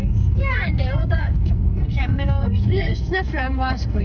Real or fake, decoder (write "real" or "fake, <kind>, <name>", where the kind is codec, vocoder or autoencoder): fake, codec, SNAC